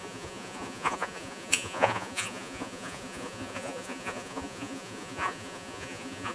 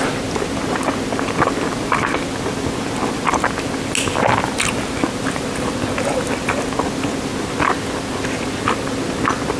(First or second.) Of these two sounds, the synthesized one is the first